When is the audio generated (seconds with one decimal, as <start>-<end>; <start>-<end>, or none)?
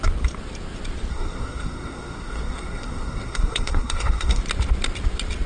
1.1-4.4